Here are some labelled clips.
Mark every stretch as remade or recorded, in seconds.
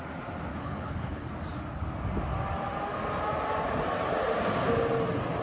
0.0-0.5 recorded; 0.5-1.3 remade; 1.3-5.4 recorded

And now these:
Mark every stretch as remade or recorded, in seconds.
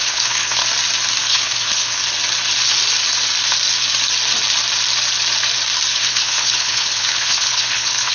0.0-0.6 remade; 0.6-1.2 recorded; 1.2-2.0 remade; 2.0-5.9 recorded; 5.9-8.1 remade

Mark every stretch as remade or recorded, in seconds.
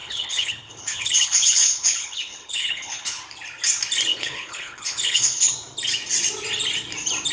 0.0-3.2 remade; 3.2-4.1 recorded; 4.1-5.5 remade; 5.5-7.3 recorded